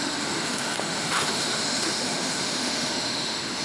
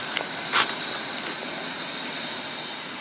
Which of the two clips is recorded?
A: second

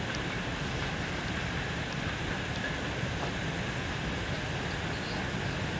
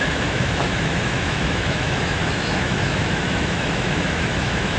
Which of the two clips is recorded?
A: first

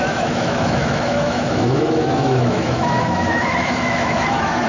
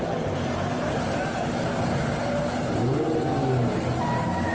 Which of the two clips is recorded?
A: second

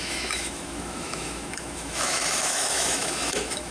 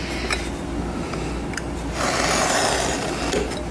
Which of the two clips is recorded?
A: second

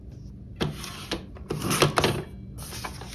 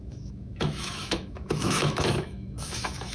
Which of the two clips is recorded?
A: first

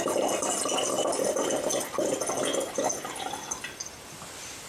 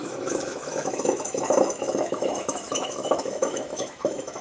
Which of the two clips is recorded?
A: first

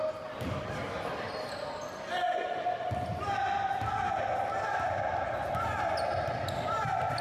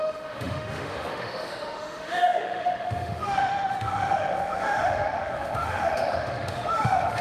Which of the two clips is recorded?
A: first